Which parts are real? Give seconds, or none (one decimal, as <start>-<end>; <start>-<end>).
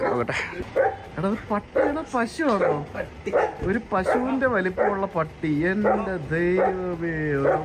0.0-2.1; 3.1-7.6